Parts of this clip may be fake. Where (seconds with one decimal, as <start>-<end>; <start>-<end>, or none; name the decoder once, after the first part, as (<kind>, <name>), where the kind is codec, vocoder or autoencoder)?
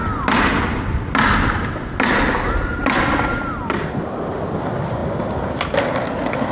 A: none